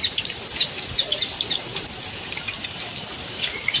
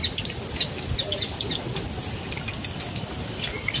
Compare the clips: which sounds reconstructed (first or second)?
first